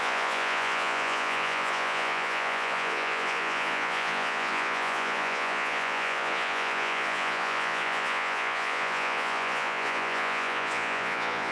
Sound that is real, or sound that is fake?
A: fake